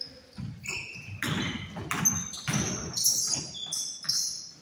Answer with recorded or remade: recorded